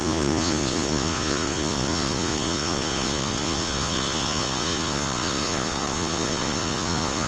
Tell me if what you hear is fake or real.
fake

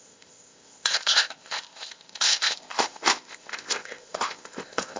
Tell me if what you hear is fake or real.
fake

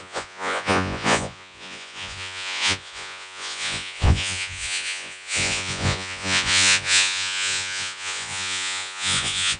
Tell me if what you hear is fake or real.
fake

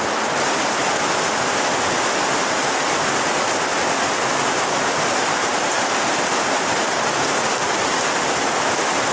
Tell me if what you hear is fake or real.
real